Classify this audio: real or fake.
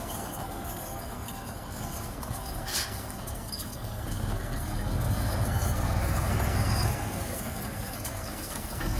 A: fake